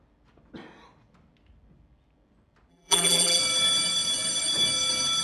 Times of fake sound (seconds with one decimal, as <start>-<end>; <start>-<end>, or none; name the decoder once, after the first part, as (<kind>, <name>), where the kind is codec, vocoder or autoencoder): 2.7-3.4 (vocoder, BigVGAN v2)